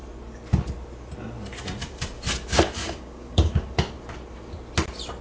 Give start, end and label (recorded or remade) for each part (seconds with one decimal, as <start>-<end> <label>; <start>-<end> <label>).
0.0-2.8 recorded; 2.8-3.5 remade; 3.5-5.2 recorded